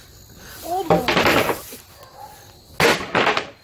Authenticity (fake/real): real